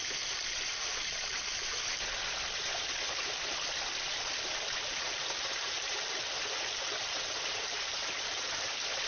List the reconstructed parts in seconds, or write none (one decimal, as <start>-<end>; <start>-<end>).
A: 0.0-1.3; 4.1-8.6